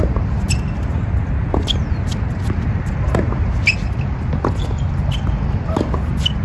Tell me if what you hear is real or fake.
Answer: real